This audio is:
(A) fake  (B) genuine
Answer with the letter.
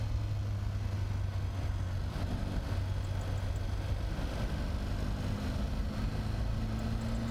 B